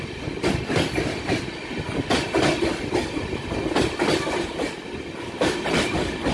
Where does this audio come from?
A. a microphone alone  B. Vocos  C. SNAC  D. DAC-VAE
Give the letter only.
A